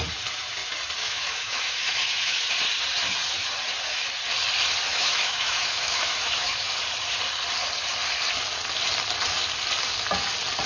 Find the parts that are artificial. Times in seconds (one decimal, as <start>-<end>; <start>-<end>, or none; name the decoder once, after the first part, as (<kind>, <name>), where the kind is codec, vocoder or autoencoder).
1.0-2.4 (autoencoder, DAC-VAE); 4.9-6.7